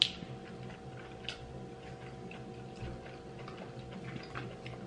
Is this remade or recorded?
recorded